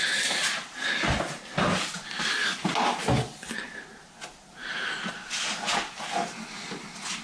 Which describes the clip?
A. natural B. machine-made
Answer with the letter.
A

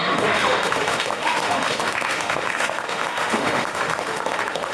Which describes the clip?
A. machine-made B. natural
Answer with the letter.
A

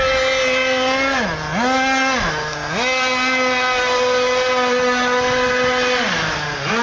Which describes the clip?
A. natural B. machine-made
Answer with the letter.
A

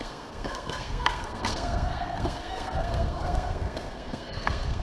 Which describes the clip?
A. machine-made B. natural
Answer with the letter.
A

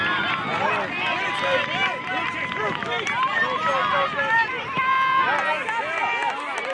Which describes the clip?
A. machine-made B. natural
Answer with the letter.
B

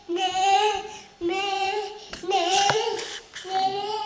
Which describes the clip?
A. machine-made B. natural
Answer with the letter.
A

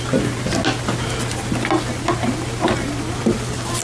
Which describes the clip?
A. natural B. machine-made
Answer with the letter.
A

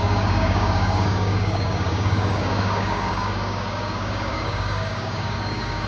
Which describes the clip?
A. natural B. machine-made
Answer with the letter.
B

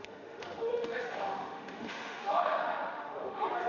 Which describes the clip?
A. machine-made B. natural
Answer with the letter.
A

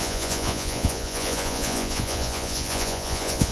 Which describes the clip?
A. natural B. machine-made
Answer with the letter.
B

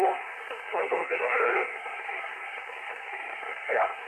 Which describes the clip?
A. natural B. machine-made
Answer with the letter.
B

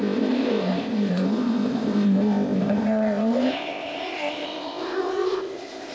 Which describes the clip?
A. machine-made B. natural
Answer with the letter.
A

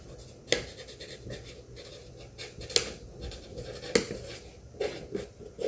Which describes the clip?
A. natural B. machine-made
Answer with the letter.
A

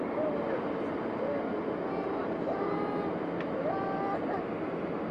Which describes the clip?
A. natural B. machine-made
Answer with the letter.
A